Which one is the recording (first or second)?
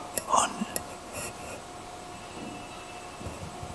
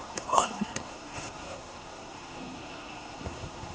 first